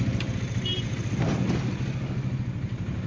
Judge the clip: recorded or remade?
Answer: recorded